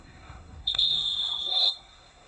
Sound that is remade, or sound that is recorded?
remade